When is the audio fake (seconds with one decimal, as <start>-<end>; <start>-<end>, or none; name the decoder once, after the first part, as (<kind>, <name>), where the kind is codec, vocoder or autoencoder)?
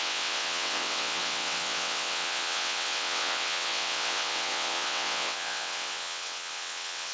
0.0-7.1 (vocoder, WaveNeXt)